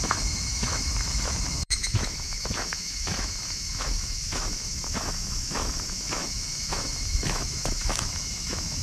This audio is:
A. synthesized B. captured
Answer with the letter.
A